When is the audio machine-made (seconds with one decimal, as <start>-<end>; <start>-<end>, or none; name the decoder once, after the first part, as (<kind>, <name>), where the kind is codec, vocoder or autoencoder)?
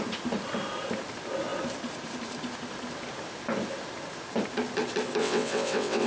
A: 5.2-6.1 (vocoder, WaveNeXt)